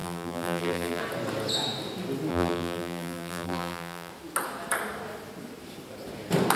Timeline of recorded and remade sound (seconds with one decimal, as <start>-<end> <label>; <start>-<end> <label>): 0.0-1.0 remade; 1.0-2.3 recorded; 2.3-4.1 remade; 4.1-6.6 recorded